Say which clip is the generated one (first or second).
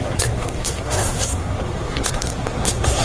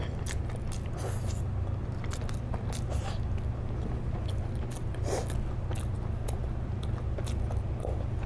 first